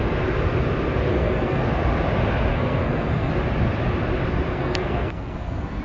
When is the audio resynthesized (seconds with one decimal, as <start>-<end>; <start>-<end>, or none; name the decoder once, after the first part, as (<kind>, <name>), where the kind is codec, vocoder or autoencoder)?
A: 1.1-1.6 (codec, SNAC); 2.5-3.3; 4.5-5.8